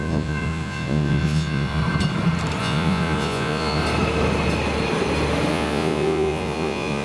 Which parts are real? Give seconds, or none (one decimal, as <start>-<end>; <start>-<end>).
1.8-2.6; 3.8-5.5